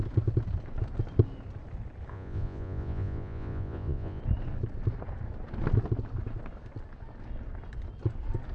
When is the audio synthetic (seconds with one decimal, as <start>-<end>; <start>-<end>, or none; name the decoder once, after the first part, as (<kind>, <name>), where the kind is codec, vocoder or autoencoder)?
2.1-4.2 (vocoder, Vocos)